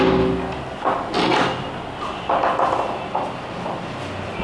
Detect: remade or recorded recorded